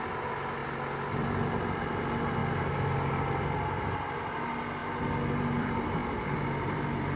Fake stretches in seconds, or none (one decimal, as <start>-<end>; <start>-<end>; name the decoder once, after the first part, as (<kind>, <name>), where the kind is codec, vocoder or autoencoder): 0.0-2.4 (vocoder, BigVGAN v2); 3.8-4.8; 5.6-6.0; 6.6-7.2